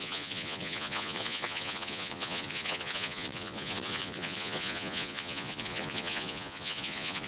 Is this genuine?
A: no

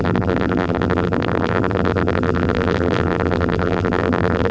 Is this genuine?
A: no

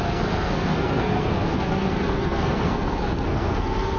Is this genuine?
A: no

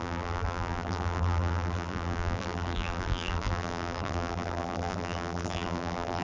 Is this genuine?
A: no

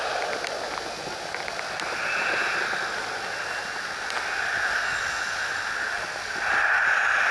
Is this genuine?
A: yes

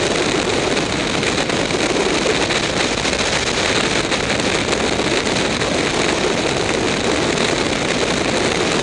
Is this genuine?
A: yes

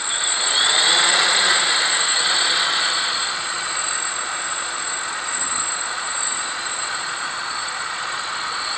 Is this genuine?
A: no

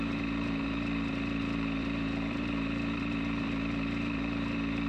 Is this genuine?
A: no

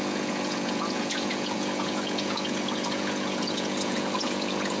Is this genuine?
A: no